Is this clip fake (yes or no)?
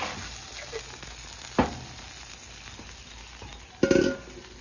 no